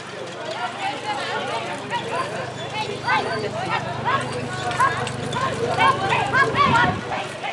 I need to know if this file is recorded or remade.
recorded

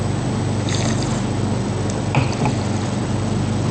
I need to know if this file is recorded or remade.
recorded